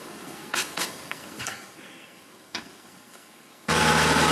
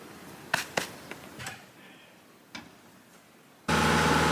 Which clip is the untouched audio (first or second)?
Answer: second